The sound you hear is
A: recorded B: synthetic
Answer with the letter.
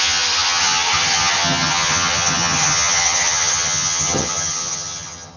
B